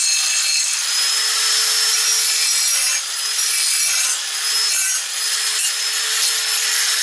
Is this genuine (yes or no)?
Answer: yes